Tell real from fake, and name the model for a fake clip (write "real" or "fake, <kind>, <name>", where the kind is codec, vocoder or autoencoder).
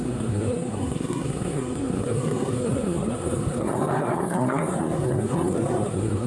fake, codec, SNAC